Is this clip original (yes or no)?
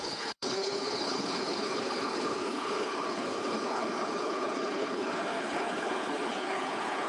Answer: no